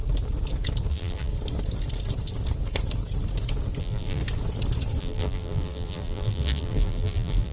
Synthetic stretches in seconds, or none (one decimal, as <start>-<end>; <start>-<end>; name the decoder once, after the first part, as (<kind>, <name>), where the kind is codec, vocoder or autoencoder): 0.9-1.3 (vocoder, BigVGAN v2); 3.8-4.2; 5.0-7.5

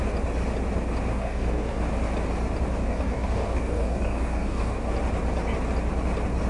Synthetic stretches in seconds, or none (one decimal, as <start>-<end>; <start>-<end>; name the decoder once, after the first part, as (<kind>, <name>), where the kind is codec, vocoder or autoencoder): 1.1-1.8 (codec, DAC); 2.8-4.9